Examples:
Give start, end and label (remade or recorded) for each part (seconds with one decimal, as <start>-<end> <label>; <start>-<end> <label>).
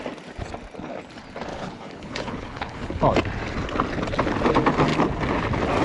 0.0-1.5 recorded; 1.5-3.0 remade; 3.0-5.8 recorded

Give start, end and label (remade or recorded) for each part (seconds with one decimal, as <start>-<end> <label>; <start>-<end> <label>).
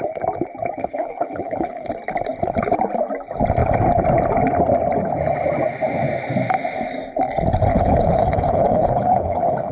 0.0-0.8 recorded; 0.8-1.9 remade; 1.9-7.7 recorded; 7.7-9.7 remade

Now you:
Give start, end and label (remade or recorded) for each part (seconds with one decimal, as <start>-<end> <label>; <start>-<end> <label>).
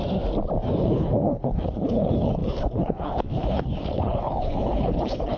0.0-0.8 recorded; 0.8-5.4 remade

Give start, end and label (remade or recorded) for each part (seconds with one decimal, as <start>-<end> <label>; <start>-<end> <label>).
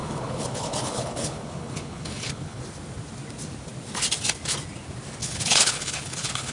0.0-2.6 remade; 2.6-5.2 recorded; 5.2-6.5 remade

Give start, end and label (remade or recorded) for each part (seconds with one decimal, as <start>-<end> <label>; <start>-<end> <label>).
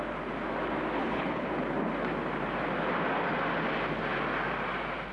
0.0-1.0 recorded; 1.0-1.5 remade; 1.5-5.1 recorded